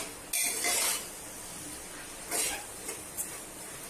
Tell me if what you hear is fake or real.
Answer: real